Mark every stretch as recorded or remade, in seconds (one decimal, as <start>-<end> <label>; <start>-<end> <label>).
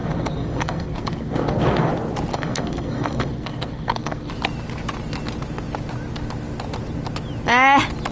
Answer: 0.0-1.9 remade; 1.9-2.3 recorded; 2.3-4.3 remade; 4.3-8.1 recorded